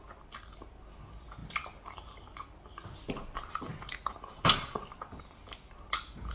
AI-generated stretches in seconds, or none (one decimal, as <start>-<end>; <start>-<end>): none